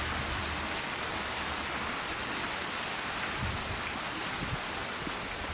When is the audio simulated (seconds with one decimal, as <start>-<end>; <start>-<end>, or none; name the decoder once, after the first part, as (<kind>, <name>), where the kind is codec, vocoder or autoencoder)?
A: none